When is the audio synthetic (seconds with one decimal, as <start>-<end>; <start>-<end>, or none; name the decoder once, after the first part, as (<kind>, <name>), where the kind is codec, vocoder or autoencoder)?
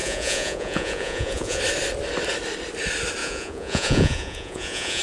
0.0-1.6 (vocoder, Vocos); 3.2-5.0